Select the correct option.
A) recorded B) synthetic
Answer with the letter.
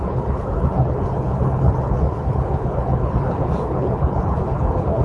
B